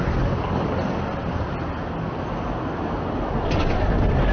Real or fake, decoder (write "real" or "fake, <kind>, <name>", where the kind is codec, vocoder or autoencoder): real